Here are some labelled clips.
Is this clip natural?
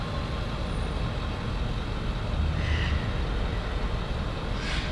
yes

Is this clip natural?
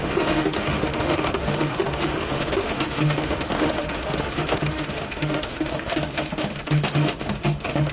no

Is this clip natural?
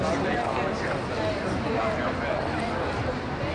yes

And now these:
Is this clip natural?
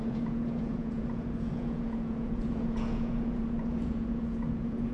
no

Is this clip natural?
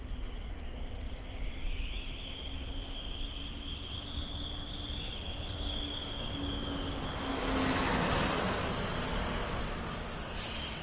yes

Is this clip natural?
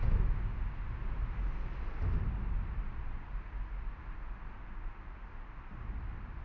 yes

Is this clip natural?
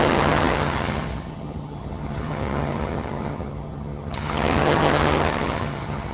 no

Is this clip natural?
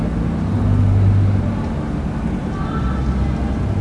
yes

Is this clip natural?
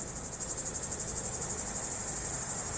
yes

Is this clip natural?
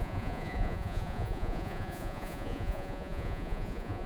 no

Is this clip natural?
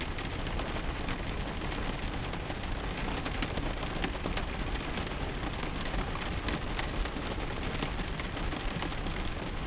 yes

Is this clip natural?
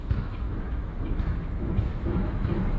no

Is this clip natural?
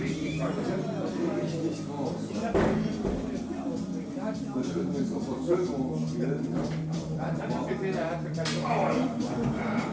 no